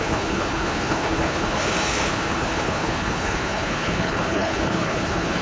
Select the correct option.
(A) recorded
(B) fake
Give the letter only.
B